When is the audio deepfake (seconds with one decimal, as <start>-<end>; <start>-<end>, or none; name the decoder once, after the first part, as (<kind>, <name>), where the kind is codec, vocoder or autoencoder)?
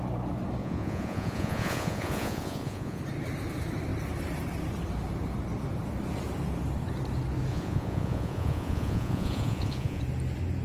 0.6-3.0 (vocoder, Vocos); 7.5-10.0